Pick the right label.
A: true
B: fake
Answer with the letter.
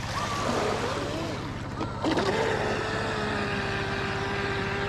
A